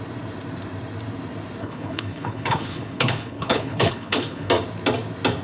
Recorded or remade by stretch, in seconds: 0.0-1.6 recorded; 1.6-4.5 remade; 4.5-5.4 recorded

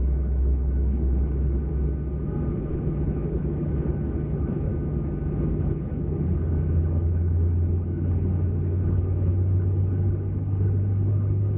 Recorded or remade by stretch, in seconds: 0.0-1.7 remade; 1.7-2.5 recorded; 2.5-4.7 remade; 4.7-5.5 recorded; 5.5-11.6 remade

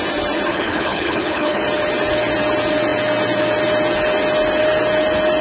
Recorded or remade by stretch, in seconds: 0.0-0.5 recorded; 0.5-1.6 remade; 1.6-5.4 recorded

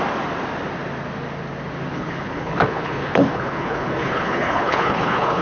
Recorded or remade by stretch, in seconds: 0.0-1.9 recorded; 1.9-5.4 remade

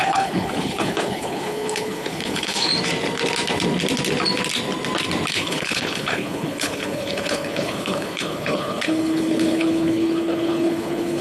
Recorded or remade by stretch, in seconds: 0.0-2.7 remade; 2.7-5.3 recorded; 5.3-11.2 remade

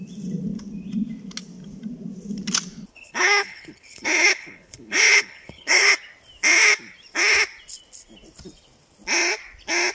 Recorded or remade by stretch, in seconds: 0.0-2.9 recorded; 2.9-5.9 remade; 5.9-9.9 recorded